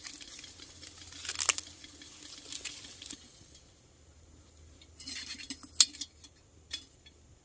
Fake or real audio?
real